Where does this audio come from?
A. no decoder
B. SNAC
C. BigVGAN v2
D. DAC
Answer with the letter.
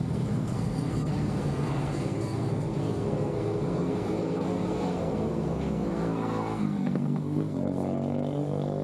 B